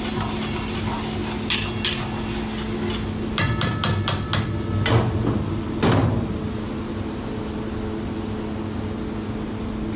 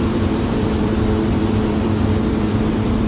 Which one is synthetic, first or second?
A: second